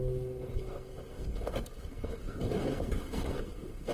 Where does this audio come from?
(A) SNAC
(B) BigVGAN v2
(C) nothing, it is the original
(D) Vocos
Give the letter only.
A